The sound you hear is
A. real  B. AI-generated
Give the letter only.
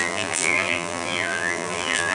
B